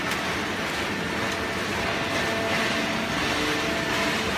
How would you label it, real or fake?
real